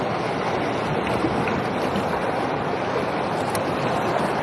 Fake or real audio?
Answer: real